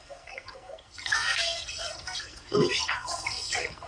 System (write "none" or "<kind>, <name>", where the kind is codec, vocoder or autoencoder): codec, SNAC